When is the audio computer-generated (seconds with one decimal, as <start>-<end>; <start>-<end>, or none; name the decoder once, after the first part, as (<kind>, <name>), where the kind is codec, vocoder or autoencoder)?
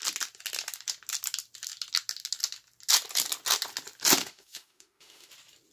4.2-5.3 (autoencoder, DAC-VAE)